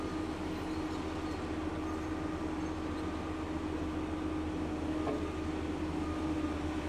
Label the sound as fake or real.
real